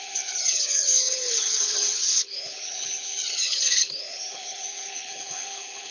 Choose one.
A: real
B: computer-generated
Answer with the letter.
B